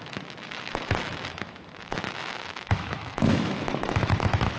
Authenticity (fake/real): fake